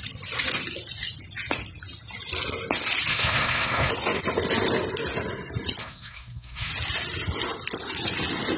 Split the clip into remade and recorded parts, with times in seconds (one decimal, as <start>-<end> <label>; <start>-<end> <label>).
0.0-3.1 recorded; 3.1-3.9 remade; 3.9-5.8 recorded; 5.8-6.7 remade; 6.7-8.6 recorded